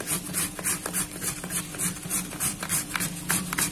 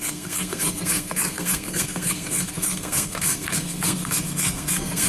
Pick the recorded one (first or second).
first